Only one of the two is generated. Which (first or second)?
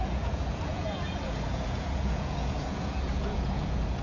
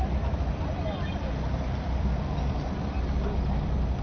first